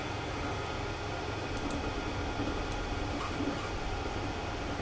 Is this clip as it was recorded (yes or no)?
yes